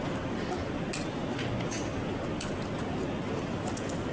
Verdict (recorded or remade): recorded